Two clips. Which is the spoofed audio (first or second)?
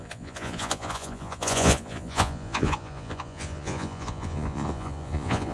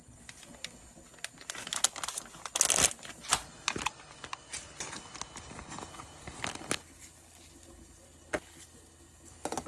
first